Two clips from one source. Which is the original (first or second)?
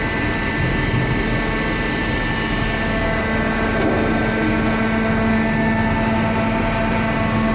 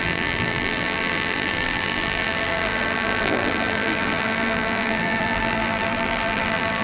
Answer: first